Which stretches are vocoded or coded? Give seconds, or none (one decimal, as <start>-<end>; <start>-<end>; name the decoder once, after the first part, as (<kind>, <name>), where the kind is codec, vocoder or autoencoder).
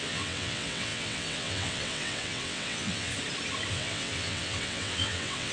0.0-3.1 (vocoder, WaveNeXt); 3.7-5.5